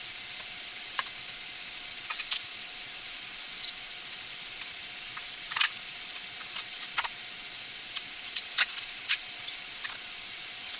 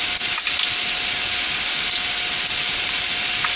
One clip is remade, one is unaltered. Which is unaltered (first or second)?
second